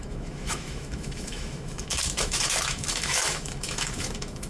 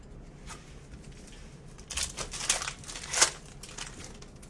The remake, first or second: first